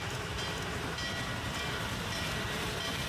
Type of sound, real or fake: real